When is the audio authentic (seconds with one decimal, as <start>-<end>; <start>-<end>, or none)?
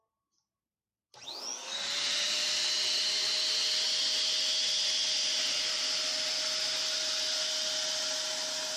0.0-8.8